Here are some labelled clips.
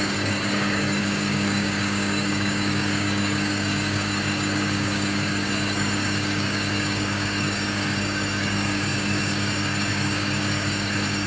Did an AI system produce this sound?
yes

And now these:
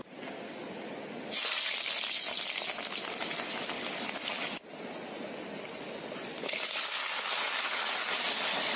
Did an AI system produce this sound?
no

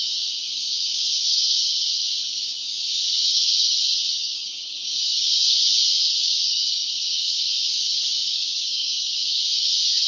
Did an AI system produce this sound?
yes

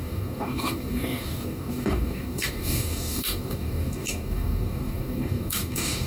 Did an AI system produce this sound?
yes